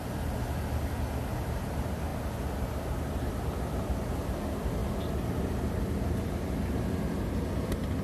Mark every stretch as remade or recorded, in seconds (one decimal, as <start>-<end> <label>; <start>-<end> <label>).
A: 0.0-8.0 recorded